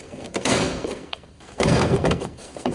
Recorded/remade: remade